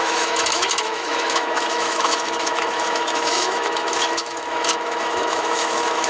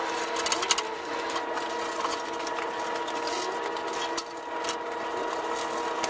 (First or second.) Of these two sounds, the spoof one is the first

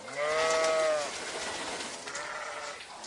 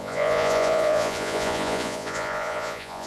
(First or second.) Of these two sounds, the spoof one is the second